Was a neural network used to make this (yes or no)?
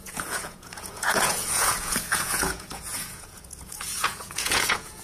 yes